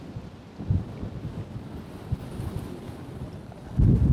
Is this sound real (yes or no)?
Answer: yes